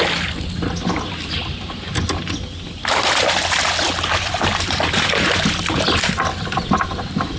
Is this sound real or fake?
fake